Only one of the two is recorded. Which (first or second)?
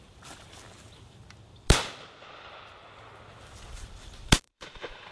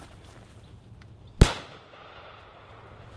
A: second